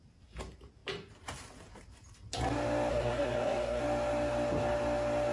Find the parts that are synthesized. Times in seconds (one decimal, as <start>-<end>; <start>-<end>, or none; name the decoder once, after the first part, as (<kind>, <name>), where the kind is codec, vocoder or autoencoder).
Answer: 2.9-3.8 (codec, SNAC)